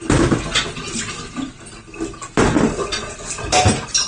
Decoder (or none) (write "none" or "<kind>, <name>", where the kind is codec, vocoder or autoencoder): none